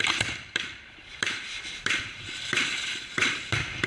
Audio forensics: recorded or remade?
remade